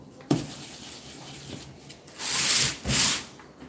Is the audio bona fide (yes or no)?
yes